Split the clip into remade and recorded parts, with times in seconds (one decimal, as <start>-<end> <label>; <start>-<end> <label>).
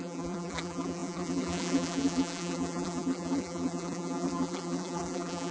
0.0-5.5 remade